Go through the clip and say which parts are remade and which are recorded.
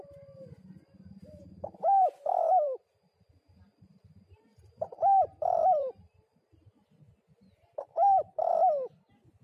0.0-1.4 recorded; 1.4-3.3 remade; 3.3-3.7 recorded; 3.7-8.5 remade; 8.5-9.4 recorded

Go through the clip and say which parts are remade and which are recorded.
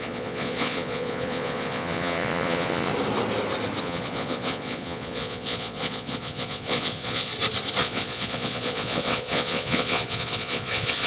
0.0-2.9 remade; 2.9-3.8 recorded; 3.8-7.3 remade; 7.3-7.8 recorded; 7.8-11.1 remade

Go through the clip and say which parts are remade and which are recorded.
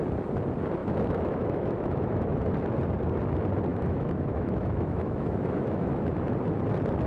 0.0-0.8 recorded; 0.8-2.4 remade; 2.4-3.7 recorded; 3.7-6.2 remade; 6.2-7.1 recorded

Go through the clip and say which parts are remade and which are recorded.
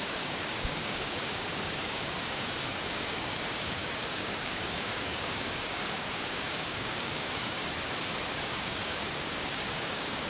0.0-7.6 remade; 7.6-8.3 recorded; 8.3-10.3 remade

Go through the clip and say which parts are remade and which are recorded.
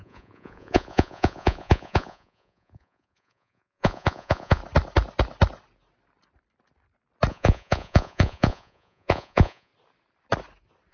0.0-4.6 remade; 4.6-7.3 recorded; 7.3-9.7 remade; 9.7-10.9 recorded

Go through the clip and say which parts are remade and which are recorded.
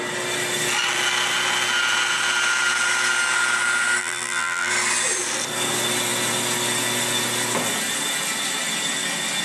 0.0-4.0 recorded; 4.0-4.7 remade; 4.7-9.4 recorded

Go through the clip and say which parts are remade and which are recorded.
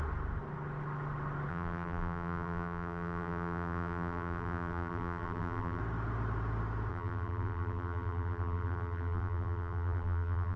0.0-1.5 recorded; 1.5-5.8 remade; 5.8-6.9 recorded; 6.9-10.6 remade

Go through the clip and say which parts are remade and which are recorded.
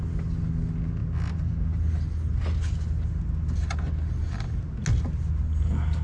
0.0-6.0 recorded